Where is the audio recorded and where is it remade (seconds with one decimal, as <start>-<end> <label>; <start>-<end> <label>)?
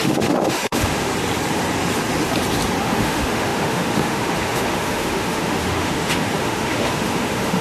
0.0-1.1 remade; 1.1-2.8 recorded; 2.8-7.6 remade